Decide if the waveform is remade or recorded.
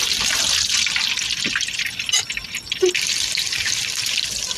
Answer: recorded